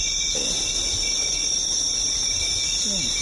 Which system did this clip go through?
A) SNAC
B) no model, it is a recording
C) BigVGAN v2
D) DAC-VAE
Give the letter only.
B